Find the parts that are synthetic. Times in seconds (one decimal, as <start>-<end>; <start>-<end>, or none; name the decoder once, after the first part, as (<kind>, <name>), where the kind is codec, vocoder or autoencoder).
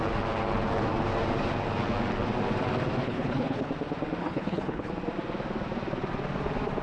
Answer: 3.0-3.7 (codec, HILCodec); 4.2-4.9